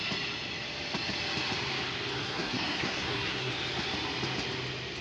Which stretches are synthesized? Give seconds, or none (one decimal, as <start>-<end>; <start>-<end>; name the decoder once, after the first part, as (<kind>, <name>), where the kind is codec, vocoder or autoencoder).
2.2-3.5 (codec, SNAC)